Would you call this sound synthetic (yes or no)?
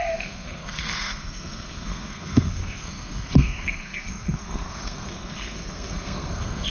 yes